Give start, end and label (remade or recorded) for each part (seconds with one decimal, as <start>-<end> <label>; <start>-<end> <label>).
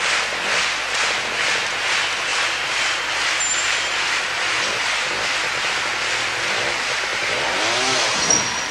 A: 0.0-2.3 recorded; 2.3-5.4 remade; 5.4-7.1 recorded; 7.1-7.6 remade; 7.6-8.7 recorded